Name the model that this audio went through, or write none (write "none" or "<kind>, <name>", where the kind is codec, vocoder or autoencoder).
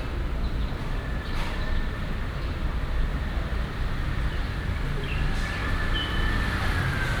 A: vocoder, BigVGAN v2